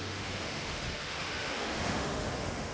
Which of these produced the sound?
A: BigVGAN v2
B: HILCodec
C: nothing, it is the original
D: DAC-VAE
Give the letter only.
D